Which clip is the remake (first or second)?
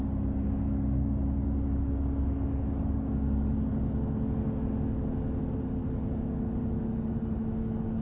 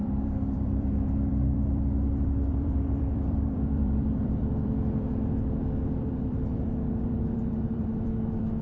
second